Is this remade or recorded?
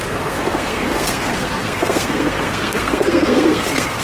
remade